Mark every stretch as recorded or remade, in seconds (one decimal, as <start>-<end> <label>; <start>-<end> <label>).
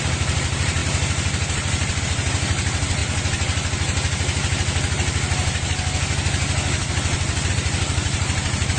0.0-0.8 remade; 0.8-2.0 recorded; 2.0-3.0 remade; 3.0-7.5 recorded; 7.5-8.8 remade